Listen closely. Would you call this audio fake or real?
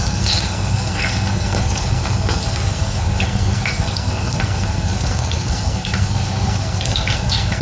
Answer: fake